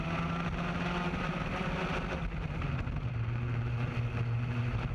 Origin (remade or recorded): recorded